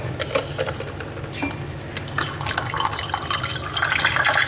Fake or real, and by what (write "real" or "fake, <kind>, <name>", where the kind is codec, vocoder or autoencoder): real